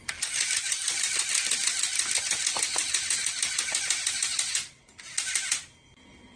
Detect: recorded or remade recorded